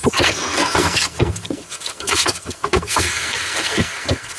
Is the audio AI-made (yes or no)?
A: yes